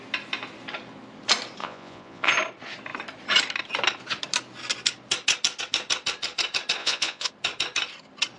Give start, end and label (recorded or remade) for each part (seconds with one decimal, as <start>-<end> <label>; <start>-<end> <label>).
0.0-1.6 recorded; 1.6-2.3 remade; 2.3-6.8 recorded; 6.8-7.3 remade; 7.3-8.4 recorded